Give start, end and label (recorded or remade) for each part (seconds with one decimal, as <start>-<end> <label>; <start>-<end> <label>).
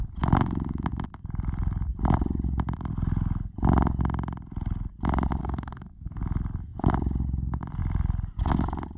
0.0-5.4 recorded; 5.4-6.2 remade; 6.2-9.0 recorded